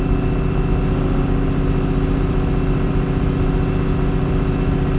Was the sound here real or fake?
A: real